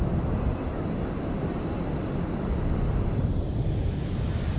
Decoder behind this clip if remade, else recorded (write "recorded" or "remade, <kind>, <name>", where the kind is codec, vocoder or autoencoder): recorded